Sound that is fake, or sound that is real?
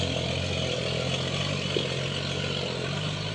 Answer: real